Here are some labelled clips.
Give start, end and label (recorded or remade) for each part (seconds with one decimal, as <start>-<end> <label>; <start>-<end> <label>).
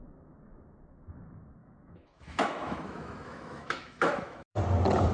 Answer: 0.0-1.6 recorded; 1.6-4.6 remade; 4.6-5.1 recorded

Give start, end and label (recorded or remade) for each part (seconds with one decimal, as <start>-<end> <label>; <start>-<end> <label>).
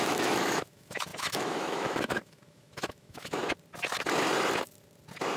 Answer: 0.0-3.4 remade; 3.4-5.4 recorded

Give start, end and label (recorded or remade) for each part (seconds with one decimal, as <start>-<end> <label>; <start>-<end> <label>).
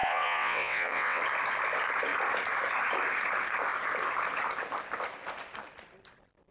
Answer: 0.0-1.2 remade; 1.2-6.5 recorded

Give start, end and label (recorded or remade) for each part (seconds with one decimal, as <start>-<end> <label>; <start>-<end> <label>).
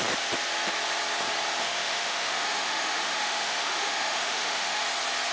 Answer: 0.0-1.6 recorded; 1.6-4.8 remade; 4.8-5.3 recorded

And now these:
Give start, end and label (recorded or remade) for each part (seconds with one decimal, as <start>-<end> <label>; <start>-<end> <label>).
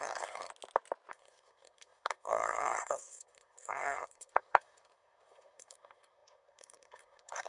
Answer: 0.0-0.5 remade; 0.5-1.1 recorded; 1.1-7.5 remade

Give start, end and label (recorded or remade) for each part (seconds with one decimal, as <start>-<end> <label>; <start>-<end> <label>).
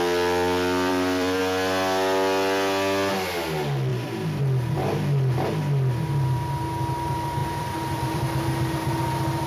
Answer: 0.0-0.9 recorded; 0.9-1.4 remade; 1.4-3.9 recorded; 3.9-4.4 remade; 4.4-7.4 recorded; 7.4-8.2 remade; 8.2-9.5 recorded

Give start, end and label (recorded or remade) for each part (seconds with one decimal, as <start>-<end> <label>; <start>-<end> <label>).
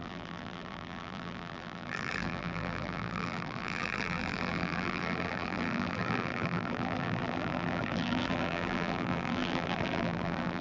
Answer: 0.0-10.6 remade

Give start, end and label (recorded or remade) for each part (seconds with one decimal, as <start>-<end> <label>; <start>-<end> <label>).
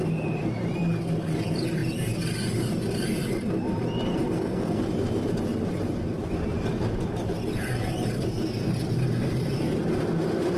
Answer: 0.0-4.1 recorded; 4.1-4.8 remade; 4.8-10.6 recorded